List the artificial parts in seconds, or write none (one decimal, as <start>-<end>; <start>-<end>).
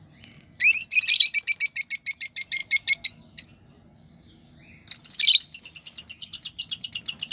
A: none